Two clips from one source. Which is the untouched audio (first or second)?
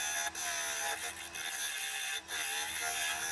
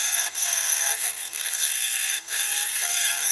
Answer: first